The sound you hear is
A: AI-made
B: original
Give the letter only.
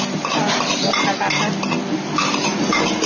B